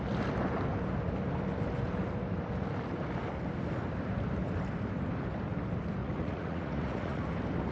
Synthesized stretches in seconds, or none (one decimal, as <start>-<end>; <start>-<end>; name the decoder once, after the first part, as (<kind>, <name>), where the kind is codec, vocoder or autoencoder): 6.0-7.2 (vocoder, Vocos)